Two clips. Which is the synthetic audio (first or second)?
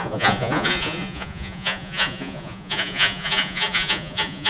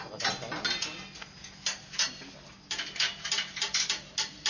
first